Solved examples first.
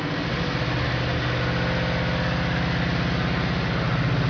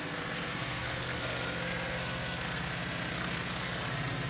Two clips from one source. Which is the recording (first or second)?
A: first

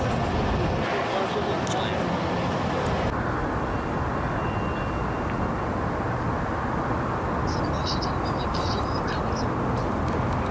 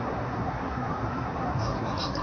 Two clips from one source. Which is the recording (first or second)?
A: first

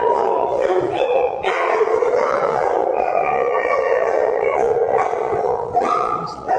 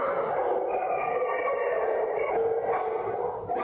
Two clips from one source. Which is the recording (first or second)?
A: second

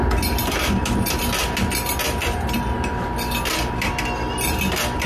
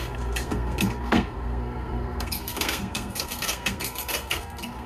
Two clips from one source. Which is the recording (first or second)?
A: first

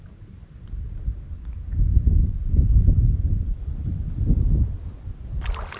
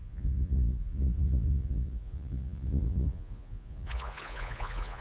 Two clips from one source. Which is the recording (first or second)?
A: first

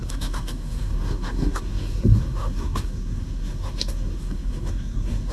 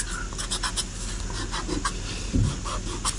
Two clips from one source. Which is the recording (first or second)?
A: second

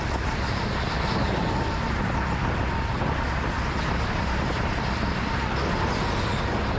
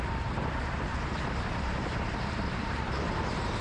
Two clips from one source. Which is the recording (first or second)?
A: first